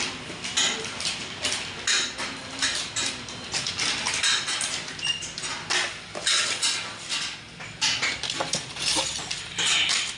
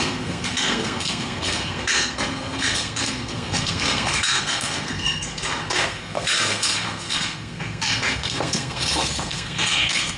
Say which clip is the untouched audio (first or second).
first